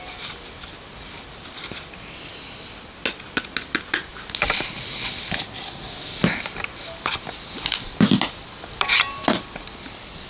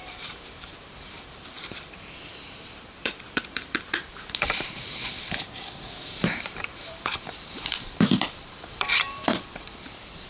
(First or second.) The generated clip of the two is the second